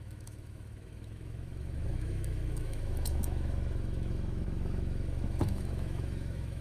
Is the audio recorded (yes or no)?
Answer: no